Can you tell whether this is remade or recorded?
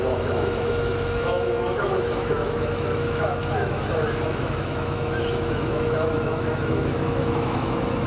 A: remade